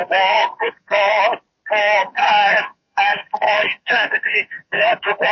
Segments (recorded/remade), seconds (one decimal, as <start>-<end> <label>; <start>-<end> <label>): 0.0-1.2 remade; 1.2-1.8 recorded; 1.8-5.3 remade